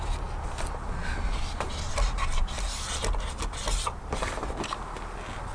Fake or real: real